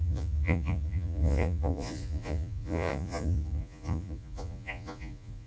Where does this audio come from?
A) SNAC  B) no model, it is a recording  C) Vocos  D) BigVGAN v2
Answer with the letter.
C